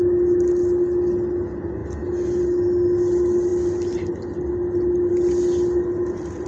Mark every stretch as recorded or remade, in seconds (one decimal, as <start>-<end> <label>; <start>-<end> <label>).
0.0-6.5 recorded